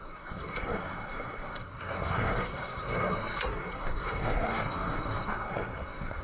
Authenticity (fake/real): fake